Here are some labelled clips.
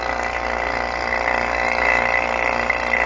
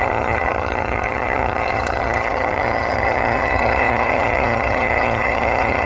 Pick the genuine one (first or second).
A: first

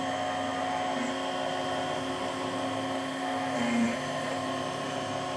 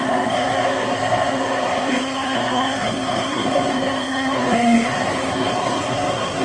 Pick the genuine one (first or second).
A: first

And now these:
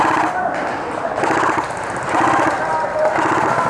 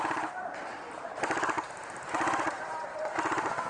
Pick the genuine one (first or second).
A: first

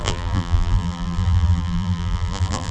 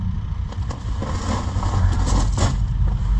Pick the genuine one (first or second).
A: second